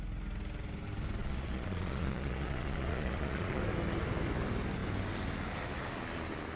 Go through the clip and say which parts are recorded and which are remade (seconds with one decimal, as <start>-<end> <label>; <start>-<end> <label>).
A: 0.0-1.2 recorded; 1.2-3.6 remade; 3.6-6.6 recorded